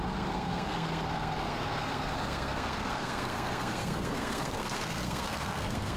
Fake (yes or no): yes